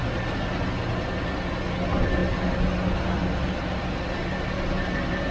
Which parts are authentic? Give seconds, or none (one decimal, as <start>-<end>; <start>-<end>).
0.0-5.3